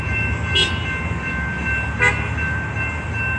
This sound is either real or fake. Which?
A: real